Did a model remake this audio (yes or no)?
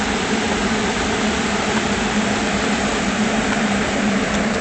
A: yes